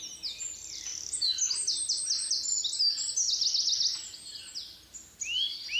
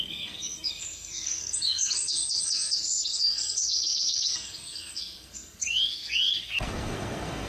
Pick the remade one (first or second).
second